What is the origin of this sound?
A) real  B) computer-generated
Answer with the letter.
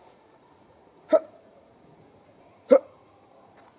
B